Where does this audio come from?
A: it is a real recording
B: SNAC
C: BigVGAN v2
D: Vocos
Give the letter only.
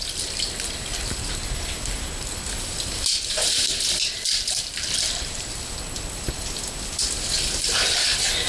A